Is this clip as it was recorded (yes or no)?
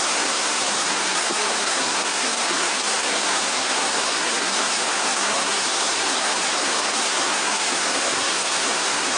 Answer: no